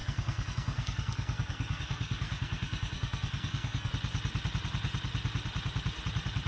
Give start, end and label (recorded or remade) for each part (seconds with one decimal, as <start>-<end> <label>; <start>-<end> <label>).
0.0-3.9 remade; 3.9-6.5 recorded